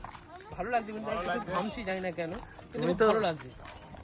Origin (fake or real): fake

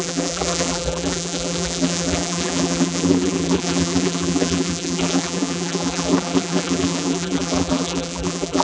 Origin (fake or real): fake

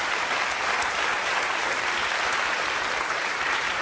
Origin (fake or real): fake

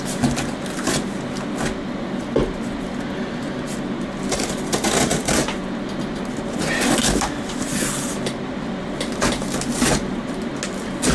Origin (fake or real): real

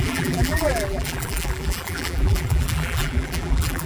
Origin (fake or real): fake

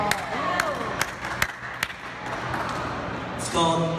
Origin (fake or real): real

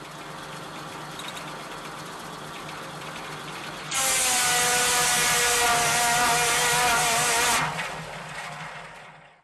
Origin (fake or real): real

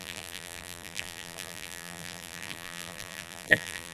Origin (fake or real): fake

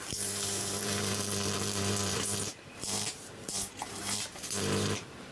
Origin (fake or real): fake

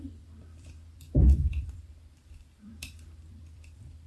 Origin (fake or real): fake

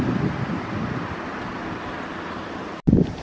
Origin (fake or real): real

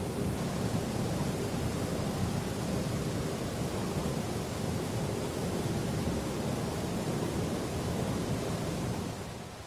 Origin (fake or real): real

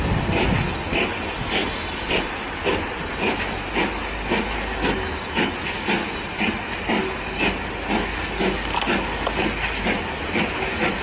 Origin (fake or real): real